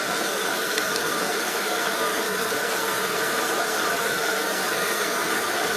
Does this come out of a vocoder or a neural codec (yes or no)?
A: yes